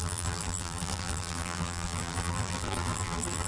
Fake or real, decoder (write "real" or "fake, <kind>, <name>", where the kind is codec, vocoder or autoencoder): fake, vocoder, BigVGAN v2